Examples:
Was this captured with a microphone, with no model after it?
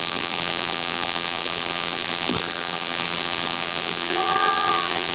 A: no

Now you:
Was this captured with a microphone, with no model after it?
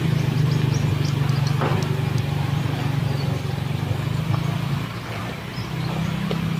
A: yes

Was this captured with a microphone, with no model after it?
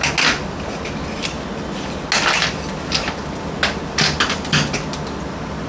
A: yes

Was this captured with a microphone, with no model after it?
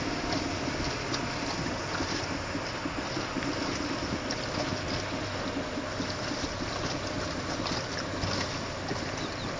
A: yes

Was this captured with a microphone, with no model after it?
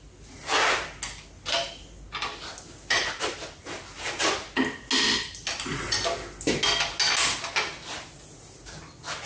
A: yes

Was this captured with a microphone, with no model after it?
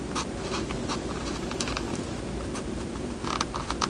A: yes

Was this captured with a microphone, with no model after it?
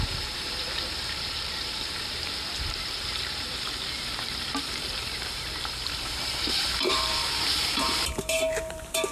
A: no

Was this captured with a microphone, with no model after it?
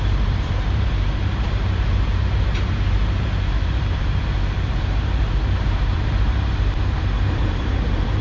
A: no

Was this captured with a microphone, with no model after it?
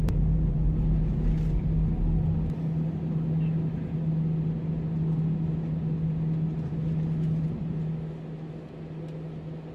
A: yes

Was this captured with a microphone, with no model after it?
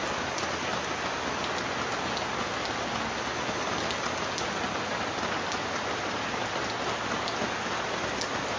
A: yes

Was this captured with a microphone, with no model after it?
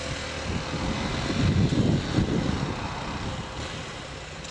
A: yes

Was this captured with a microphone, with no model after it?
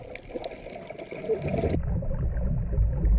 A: yes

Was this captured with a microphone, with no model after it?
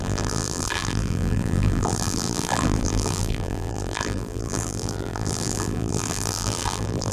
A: no